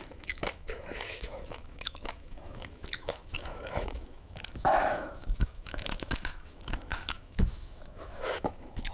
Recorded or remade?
remade